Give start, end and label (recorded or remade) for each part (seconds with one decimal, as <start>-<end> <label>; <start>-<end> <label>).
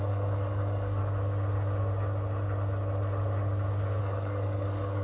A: 0.0-1.0 remade; 1.0-4.0 recorded; 4.0-5.0 remade